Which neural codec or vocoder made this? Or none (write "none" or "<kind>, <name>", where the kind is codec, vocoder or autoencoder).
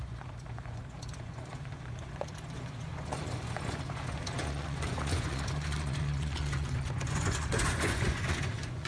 vocoder, Vocos